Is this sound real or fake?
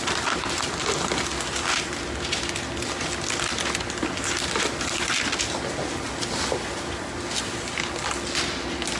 real